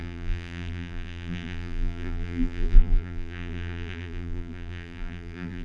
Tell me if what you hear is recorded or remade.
remade